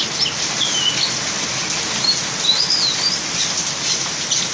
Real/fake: real